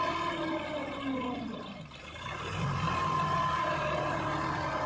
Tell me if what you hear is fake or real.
real